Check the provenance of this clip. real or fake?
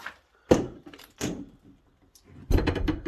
fake